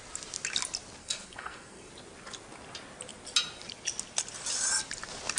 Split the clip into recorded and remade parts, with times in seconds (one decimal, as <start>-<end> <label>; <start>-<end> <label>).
0.0-1.0 recorded; 1.0-1.9 remade; 1.9-5.4 recorded